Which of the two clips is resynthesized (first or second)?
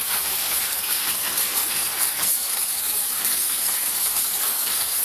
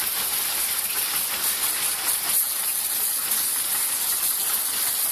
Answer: first